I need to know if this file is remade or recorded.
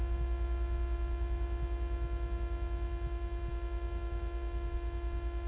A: recorded